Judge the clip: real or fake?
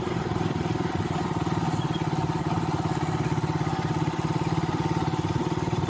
real